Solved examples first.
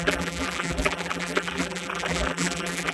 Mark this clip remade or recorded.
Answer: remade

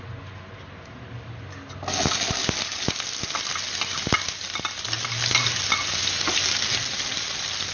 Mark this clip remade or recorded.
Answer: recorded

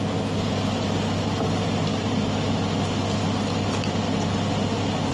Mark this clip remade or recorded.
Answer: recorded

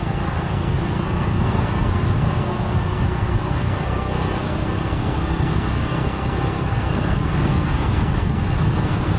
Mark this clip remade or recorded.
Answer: remade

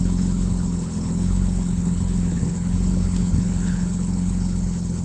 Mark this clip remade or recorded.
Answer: remade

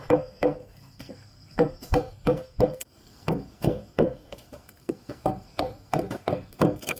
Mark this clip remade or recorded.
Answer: remade